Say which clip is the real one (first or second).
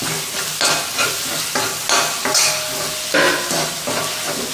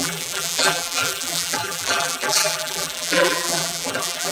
first